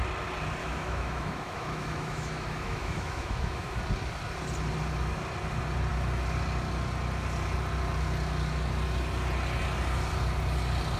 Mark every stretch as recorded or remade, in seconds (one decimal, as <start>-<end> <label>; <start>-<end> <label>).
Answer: 0.0-0.6 recorded; 0.6-3.8 remade; 3.8-11.0 recorded